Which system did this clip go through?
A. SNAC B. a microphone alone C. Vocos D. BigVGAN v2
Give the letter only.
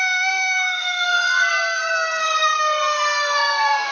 A